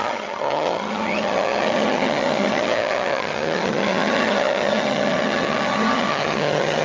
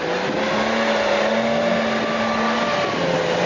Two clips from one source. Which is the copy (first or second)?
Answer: first